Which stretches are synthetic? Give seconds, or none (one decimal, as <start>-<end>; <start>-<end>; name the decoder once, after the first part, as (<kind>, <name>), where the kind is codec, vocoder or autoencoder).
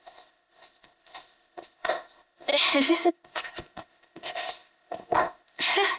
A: 0.0-6.0 (codec, ZipCodec)